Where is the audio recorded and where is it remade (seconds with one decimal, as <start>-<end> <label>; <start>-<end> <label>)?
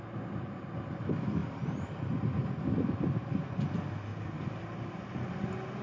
0.0-4.1 recorded; 4.1-4.6 remade; 4.6-5.8 recorded